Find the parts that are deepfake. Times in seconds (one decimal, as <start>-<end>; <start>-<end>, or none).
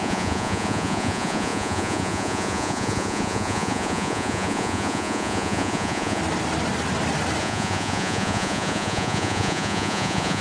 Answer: 0.0-6.2; 7.4-10.4